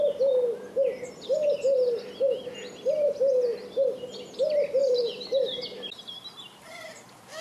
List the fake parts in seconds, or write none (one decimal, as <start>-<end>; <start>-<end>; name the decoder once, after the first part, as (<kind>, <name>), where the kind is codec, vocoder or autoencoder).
4.8-7.4 (vocoder, BigVGAN v2)